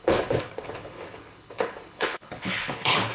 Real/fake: fake